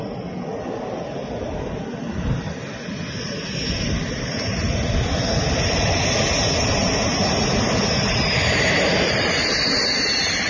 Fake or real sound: real